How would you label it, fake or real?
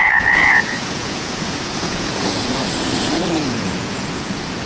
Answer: fake